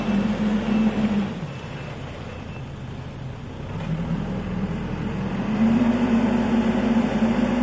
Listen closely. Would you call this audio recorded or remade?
recorded